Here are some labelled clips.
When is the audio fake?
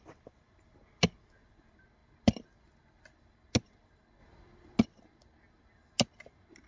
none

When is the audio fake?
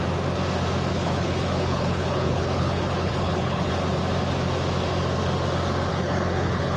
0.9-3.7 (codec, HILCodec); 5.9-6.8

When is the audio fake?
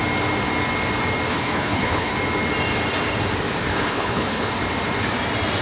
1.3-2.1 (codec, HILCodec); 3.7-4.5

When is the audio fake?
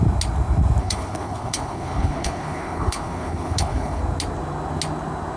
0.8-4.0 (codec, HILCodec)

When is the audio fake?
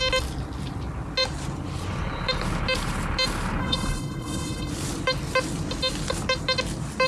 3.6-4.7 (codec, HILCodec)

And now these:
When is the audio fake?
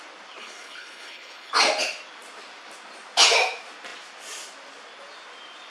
0.4-1.5 (codec, HILCodec)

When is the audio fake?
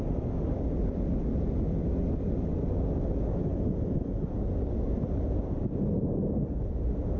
none